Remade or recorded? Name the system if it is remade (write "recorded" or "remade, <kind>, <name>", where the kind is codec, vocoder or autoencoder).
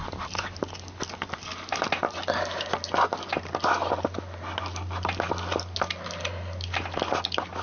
recorded